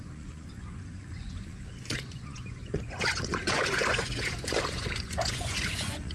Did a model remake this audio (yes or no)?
yes